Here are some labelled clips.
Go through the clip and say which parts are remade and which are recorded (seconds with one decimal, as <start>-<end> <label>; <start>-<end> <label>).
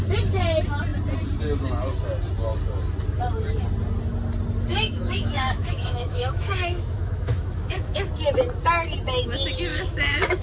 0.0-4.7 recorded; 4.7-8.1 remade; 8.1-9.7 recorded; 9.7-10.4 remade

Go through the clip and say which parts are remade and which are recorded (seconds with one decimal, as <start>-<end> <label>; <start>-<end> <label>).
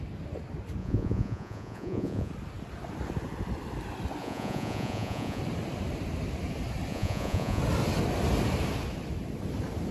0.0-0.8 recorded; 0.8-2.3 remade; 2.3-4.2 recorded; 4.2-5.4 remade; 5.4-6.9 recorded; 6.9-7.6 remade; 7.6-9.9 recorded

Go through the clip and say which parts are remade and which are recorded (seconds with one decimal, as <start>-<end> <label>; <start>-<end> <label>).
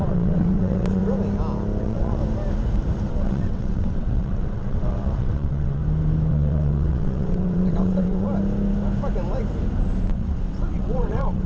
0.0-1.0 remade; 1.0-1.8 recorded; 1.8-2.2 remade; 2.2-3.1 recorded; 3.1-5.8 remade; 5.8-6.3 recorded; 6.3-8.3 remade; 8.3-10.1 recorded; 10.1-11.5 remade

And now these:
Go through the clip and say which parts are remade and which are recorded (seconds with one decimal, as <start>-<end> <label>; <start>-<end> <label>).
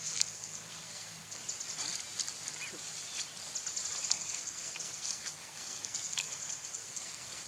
0.0-1.4 remade; 1.4-4.1 recorded; 4.1-7.5 remade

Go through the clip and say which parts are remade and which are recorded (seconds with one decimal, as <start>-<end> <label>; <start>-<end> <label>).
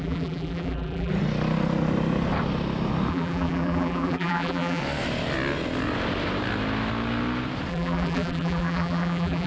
0.0-1.1 remade; 1.1-3.1 recorded; 3.1-4.8 remade; 4.8-7.7 recorded; 7.7-9.5 remade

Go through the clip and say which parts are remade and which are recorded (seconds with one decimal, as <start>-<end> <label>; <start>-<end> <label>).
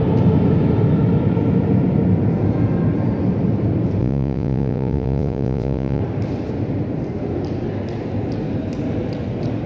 0.0-4.0 recorded; 4.0-6.0 remade; 6.0-9.7 recorded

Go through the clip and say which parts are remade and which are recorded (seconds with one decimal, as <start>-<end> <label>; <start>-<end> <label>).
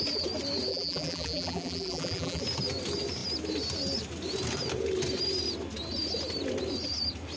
0.0-0.7 recorded; 0.7-2.4 remade; 2.4-7.4 recorded